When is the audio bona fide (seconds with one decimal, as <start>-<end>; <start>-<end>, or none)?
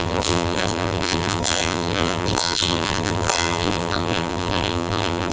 none